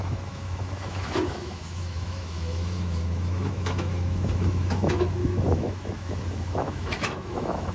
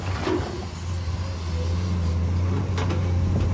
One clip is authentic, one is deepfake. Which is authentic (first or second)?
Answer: second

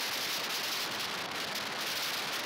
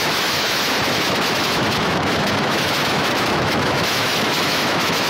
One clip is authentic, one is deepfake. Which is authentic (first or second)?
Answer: first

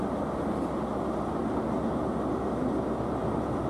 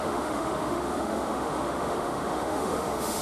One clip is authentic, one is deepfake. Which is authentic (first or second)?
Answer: first